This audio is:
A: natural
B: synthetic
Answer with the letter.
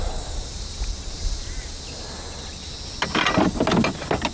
A